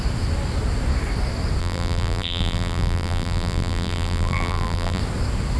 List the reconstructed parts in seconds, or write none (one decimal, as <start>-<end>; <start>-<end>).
1.6-5.0